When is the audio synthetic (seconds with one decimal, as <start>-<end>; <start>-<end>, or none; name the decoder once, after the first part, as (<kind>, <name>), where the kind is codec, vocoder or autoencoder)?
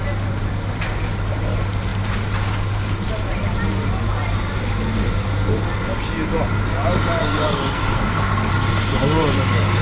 7.2-8.5 (codec, SNAC)